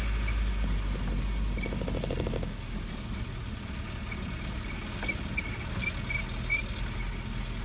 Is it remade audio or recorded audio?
recorded